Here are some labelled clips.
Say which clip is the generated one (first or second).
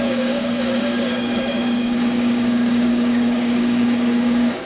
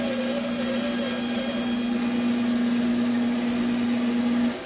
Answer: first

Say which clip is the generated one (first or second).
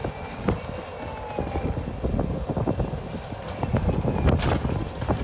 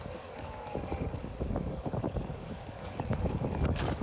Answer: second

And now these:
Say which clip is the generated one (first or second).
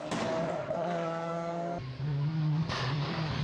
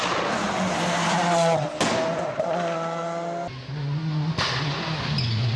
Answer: first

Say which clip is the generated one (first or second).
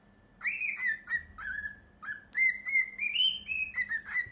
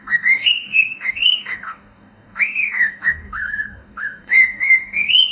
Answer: second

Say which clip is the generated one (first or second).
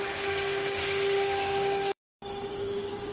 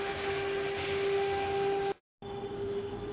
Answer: first